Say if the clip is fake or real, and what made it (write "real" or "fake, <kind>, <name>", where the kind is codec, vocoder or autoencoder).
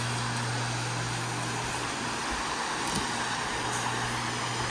real